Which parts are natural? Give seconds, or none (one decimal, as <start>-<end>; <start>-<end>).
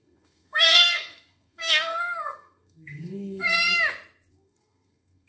3.7-4.3